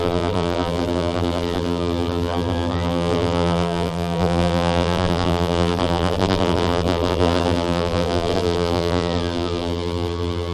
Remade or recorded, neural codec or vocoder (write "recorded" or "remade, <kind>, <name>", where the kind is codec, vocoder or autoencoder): remade, vocoder, BigVGAN v2